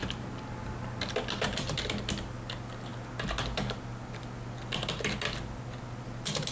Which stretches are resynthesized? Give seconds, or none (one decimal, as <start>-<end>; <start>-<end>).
none